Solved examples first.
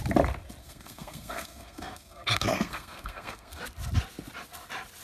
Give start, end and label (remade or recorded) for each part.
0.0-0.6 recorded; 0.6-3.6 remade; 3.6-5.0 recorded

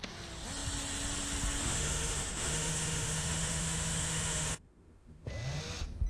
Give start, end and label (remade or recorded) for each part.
0.0-1.6 recorded; 1.6-5.3 remade; 5.3-6.1 recorded